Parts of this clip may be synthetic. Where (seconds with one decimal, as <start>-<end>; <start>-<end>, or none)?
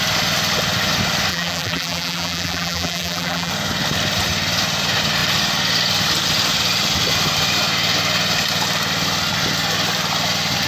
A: 1.3-3.5